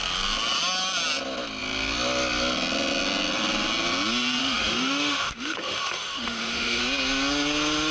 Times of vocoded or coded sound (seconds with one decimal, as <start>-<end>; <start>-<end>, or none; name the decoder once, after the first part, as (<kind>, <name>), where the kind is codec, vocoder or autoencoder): 4.4-6.8 (autoencoder, DAC-VAE)